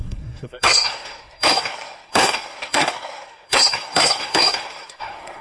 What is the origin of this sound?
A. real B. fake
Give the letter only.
B